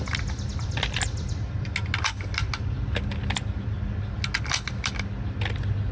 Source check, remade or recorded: recorded